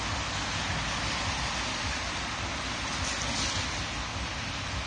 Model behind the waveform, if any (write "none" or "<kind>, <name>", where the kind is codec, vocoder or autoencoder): none